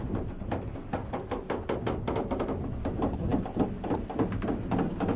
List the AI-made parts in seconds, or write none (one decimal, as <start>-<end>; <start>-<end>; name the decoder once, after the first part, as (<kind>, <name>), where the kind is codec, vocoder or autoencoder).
none